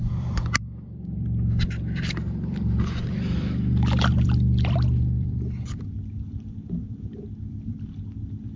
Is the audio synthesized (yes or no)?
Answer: yes